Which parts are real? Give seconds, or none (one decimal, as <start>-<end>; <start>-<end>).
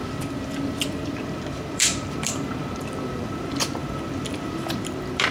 none